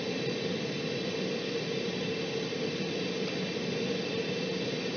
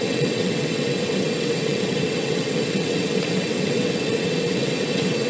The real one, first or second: first